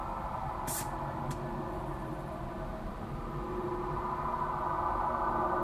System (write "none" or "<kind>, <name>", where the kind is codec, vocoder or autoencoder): vocoder, BigVGAN v2